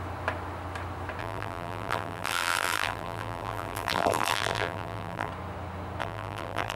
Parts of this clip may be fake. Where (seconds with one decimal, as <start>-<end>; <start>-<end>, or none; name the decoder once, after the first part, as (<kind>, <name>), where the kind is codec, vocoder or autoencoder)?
1.2-5.3 (vocoder, BigVGAN v2); 6.0-6.8